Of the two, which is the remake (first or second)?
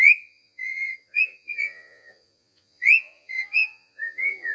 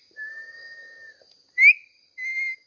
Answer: first